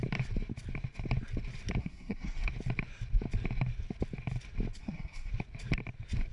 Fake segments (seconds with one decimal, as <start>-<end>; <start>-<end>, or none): 1.8-2.5; 4.8-5.3